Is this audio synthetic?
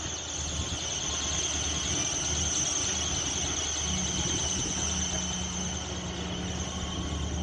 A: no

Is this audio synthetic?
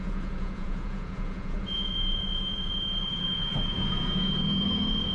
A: yes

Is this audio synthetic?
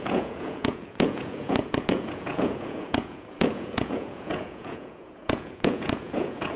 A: yes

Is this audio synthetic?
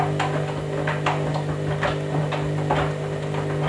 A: no